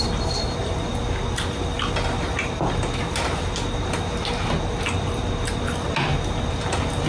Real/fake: real